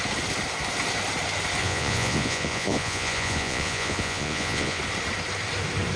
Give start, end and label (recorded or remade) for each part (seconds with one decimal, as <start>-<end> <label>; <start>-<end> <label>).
0.0-1.6 recorded; 1.6-4.8 remade; 4.8-6.0 recorded